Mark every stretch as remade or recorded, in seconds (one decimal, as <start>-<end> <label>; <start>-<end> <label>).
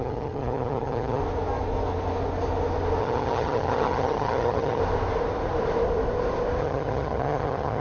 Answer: 0.0-1.2 remade; 1.2-3.0 recorded; 3.0-4.8 remade; 4.8-6.6 recorded; 6.6-7.8 remade